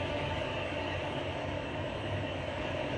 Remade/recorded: remade